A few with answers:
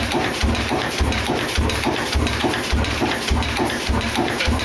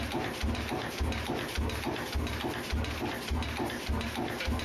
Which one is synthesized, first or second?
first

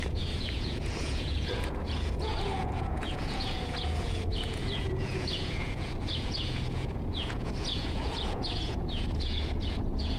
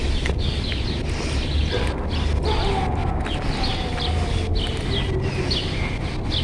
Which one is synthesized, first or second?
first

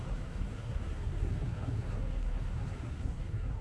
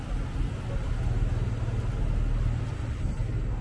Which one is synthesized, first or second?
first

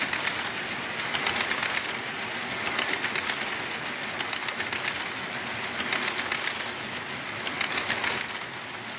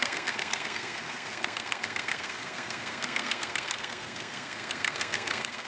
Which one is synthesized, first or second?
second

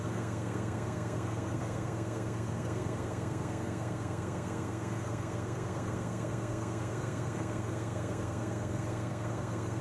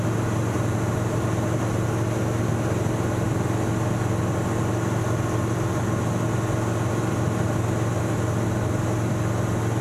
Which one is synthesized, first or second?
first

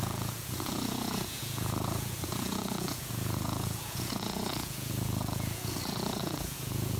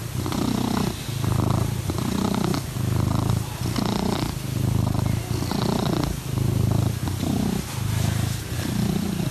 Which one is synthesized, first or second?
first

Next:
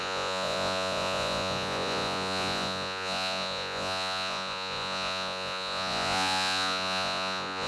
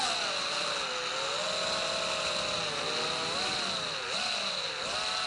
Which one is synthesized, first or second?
first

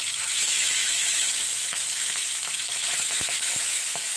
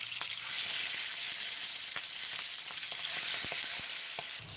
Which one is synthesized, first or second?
first